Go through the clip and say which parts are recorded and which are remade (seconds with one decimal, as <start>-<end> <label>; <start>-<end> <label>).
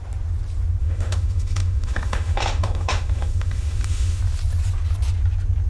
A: 0.0-0.8 recorded; 0.8-4.2 remade; 4.2-5.7 recorded